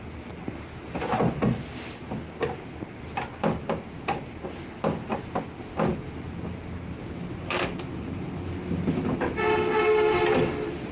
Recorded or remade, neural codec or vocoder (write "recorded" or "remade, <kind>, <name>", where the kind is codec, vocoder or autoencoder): recorded